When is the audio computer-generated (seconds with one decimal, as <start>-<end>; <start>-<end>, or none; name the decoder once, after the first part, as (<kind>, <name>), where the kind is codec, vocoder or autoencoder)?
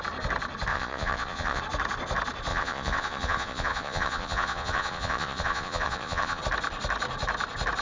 0.7-1.6 (vocoder, Vocos); 2.5-6.4